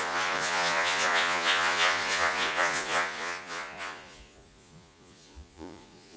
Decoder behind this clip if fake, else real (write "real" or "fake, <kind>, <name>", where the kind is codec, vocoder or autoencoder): fake, vocoder, Vocos